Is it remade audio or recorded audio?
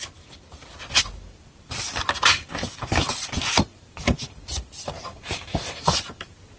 remade